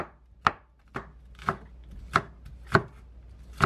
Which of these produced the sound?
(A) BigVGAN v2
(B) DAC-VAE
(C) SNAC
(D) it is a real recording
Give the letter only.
D